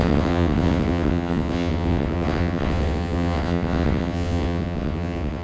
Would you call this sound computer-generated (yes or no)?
yes